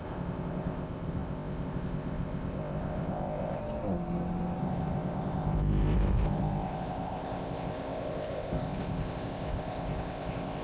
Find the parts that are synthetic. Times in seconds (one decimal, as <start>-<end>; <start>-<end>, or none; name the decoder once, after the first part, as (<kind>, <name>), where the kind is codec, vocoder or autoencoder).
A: 0.0-3.6 (codec, ZipCodec); 4.6-10.6